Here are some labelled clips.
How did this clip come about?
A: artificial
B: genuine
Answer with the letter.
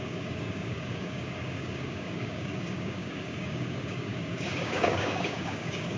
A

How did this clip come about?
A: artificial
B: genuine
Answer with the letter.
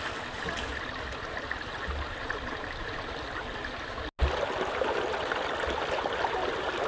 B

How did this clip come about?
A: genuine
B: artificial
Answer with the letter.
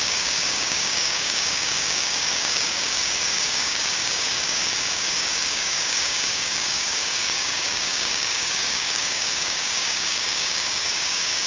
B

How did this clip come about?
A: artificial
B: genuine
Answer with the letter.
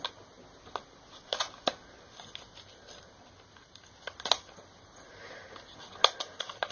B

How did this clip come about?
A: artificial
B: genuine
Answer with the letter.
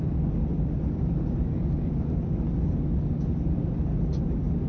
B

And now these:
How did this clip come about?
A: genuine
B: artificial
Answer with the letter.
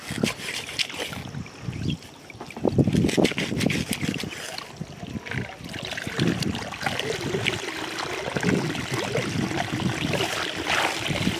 A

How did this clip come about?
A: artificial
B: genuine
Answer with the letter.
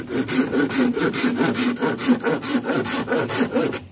B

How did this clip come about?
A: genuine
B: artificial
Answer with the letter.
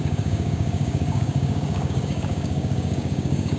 B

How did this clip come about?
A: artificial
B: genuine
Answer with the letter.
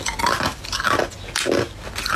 B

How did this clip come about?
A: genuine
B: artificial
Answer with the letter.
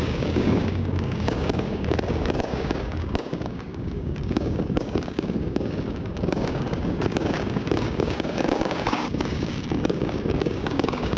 B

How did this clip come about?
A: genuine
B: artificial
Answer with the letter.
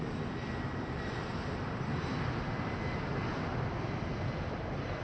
A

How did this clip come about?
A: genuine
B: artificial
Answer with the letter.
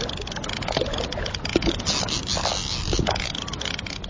A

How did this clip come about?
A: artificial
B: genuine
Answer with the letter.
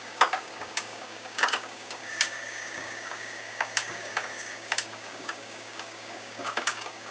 A